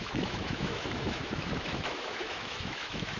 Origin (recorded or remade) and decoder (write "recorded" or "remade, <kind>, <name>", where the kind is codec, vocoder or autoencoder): remade, autoencoder, DAC-VAE